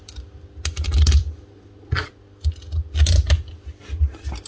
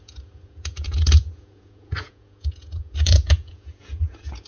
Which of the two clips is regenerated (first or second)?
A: second